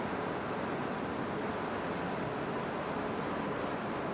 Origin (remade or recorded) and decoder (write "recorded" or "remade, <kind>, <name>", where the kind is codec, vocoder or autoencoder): recorded